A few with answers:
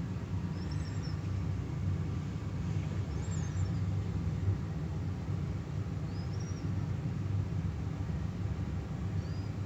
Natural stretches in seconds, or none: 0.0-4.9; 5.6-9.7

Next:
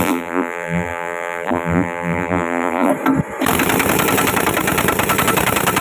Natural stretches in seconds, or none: 2.9-5.8

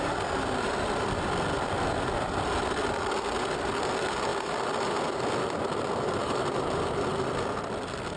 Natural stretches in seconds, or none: 0.0-6.2; 6.8-8.2

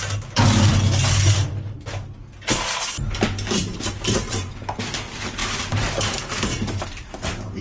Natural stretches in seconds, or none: 0.0-3.6; 4.8-5.4